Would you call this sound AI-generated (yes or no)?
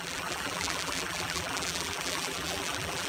yes